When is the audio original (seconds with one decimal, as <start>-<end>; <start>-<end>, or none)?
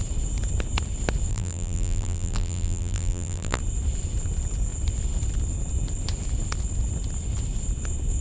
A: 0.0-1.3; 3.6-8.2